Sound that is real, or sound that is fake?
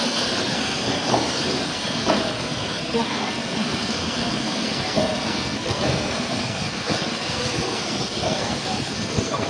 fake